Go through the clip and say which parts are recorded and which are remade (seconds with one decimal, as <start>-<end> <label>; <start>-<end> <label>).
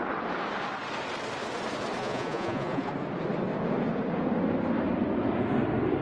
0.0-2.0 recorded; 2.0-2.9 remade; 2.9-6.0 recorded